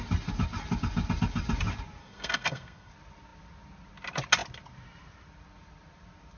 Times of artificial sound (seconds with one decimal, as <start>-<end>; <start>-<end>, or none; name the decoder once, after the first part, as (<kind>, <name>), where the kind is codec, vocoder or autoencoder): 2.0-2.9 (codec, SNAC)